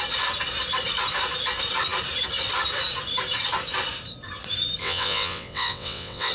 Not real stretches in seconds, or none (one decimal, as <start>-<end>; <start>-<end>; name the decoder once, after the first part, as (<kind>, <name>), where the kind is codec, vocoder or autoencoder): 4.8-6.3 (vocoder, WaveNeXt)